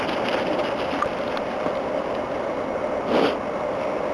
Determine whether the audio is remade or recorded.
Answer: recorded